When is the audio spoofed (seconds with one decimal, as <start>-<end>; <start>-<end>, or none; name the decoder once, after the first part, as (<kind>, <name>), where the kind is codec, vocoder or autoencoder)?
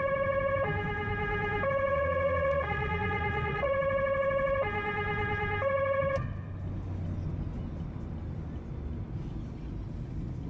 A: 1.9-3.7 (vocoder, Vocos)